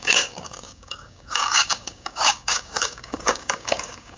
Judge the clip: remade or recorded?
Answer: remade